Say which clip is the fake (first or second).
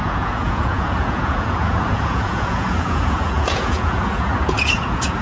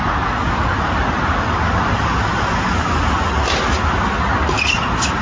first